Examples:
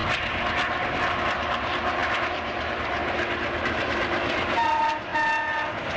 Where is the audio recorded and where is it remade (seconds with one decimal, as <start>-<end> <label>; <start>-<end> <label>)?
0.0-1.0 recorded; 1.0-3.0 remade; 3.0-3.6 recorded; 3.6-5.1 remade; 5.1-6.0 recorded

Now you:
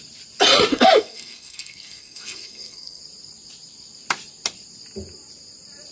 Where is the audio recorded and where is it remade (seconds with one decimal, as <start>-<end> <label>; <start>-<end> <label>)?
0.0-0.7 recorded; 0.7-3.0 remade; 3.0-5.9 recorded

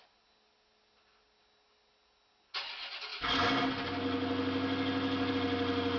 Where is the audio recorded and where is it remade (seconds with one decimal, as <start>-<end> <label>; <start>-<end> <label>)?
0.0-6.0 recorded

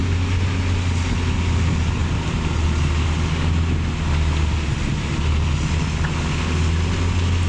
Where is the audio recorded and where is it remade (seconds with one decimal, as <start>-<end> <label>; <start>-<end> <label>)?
0.0-7.5 recorded

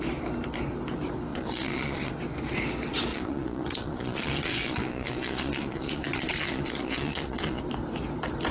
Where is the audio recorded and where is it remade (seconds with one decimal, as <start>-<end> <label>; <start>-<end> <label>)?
0.0-1.3 recorded; 1.3-2.1 remade; 2.1-3.1 recorded; 3.1-7.6 remade; 7.6-8.5 recorded